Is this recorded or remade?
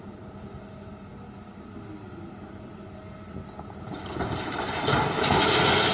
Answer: recorded